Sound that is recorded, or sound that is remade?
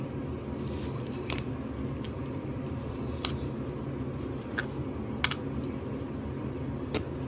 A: recorded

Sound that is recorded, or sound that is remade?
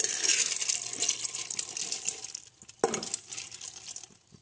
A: recorded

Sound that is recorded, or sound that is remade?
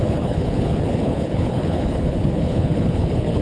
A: remade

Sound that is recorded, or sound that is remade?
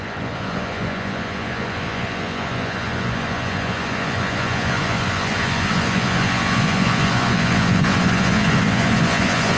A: remade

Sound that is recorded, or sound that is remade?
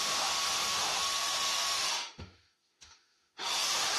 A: remade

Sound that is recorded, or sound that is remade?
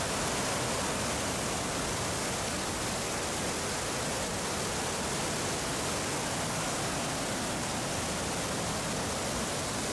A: recorded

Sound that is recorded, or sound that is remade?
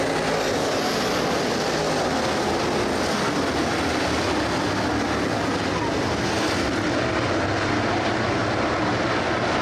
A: recorded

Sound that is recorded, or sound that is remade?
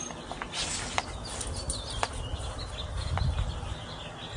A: recorded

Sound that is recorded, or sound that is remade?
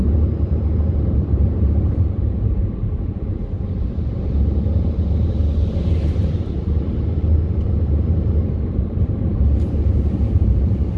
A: remade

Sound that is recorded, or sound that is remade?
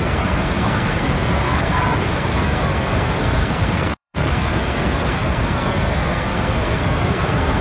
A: remade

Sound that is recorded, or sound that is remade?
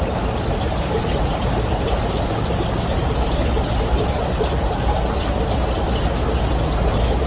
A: recorded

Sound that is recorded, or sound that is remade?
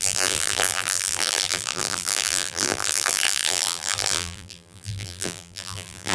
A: remade